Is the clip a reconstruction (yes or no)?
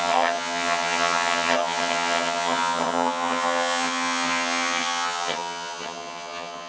yes